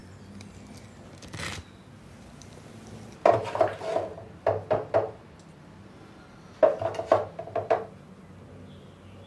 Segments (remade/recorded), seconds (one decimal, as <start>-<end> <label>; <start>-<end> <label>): 0.0-9.3 recorded